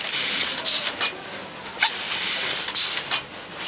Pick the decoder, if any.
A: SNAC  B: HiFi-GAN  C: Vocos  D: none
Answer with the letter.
D